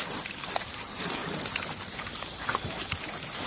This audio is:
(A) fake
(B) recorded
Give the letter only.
B